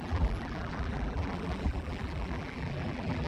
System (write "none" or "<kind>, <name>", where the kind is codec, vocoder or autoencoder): vocoder, BigVGAN v2